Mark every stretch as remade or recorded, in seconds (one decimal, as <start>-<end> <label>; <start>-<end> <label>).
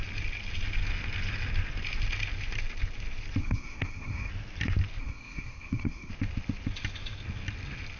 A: 0.0-3.4 recorded; 3.4-4.3 remade; 4.3-5.0 recorded; 5.0-6.1 remade; 6.1-8.0 recorded